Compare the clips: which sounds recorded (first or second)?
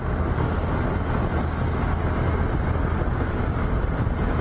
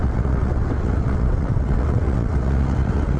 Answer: first